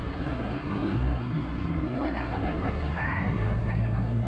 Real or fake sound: fake